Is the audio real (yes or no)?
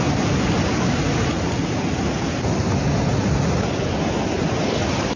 yes